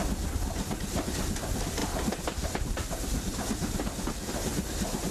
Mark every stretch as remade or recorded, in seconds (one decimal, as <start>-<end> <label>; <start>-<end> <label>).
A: 0.0-5.1 recorded

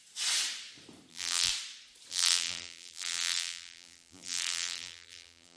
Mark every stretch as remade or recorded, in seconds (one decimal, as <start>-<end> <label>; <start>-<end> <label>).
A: 0.0-1.1 recorded; 1.1-1.5 remade; 1.5-2.1 recorded; 2.1-5.6 remade

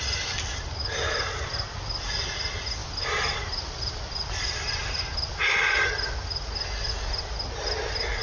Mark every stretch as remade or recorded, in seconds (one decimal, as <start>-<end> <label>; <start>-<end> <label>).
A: 0.0-8.2 recorded

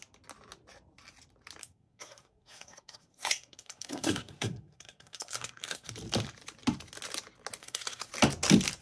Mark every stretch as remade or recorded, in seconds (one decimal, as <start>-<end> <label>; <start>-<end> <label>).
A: 0.0-1.6 recorded; 1.6-5.9 remade; 5.9-7.6 recorded; 7.6-8.1 remade; 8.1-8.8 recorded

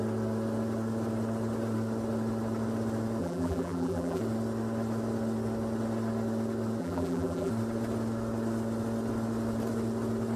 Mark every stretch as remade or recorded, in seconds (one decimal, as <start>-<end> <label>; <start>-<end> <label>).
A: 0.0-3.2 recorded; 3.2-4.2 remade; 4.2-6.8 recorded; 6.8-7.5 remade; 7.5-10.4 recorded

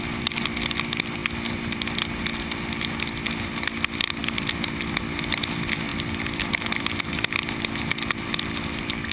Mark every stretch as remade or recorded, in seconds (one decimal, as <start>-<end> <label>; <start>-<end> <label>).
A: 0.0-9.1 recorded